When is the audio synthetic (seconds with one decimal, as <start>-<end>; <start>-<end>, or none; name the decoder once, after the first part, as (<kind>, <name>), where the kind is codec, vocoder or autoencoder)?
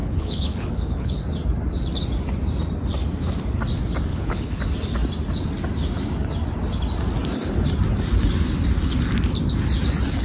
0.0-1.2 (codec, HILCodec); 4.1-4.6